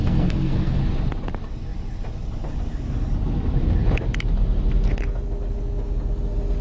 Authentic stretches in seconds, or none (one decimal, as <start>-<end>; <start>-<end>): 0.8-6.6